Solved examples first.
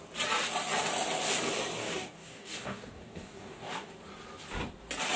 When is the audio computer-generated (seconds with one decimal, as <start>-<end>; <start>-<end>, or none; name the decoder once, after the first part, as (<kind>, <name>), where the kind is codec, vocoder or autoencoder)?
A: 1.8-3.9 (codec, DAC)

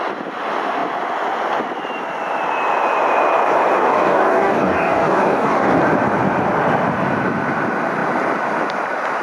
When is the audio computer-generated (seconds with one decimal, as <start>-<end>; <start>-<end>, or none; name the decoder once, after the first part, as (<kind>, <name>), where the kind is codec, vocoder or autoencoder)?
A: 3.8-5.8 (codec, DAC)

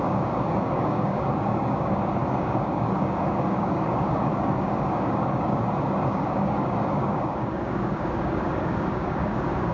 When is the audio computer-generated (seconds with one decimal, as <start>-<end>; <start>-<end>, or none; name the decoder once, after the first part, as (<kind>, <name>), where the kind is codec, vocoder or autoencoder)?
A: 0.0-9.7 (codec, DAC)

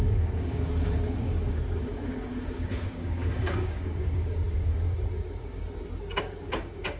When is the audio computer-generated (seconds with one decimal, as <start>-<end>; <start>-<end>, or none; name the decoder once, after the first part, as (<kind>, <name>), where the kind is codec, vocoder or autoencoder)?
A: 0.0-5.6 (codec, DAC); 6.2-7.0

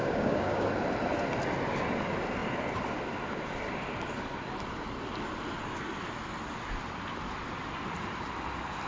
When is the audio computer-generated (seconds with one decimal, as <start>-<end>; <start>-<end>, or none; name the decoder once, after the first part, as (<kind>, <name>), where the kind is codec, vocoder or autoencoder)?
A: 0.0-0.7 (codec, DAC)

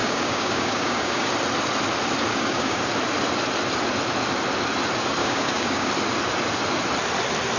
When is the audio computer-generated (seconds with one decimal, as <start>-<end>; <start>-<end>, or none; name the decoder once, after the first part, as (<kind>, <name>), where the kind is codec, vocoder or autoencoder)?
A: 0.0-1.3 (codec, DAC); 2.3-2.9; 5.2-5.9